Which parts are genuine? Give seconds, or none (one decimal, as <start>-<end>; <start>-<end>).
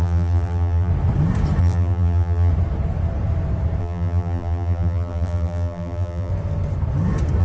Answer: 0.9-1.6; 2.5-3.8; 6.3-7.4